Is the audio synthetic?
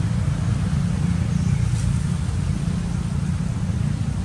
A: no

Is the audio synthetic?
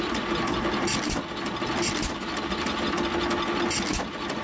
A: no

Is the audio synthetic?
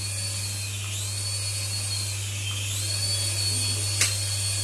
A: no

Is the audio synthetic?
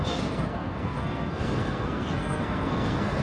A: yes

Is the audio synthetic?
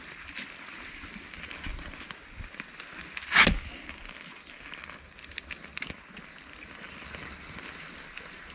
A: no